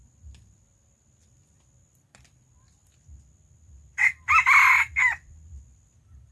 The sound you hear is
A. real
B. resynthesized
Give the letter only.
A